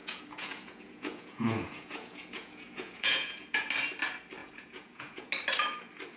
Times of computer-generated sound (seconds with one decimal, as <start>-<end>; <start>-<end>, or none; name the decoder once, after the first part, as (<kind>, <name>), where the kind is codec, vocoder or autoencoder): 0.0-3.7 (vocoder, Vocos); 4.4-5.3